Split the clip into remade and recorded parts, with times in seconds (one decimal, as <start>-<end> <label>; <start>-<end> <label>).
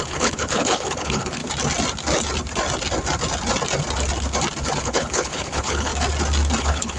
0.0-1.4 remade; 1.4-4.8 recorded; 4.8-5.9 remade; 5.9-6.6 recorded; 6.6-7.0 remade